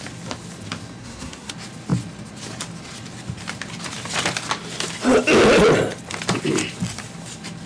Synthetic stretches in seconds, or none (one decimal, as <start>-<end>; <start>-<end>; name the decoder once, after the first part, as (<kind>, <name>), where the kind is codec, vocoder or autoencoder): 1.0-1.5 (codec, SNAC)